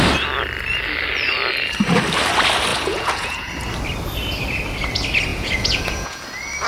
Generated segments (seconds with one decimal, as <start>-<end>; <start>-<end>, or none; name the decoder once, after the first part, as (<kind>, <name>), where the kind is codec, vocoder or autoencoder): 2.7-3.5 (vocoder, Vocos); 5.3-6.2